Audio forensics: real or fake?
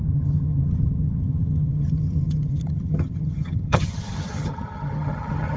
fake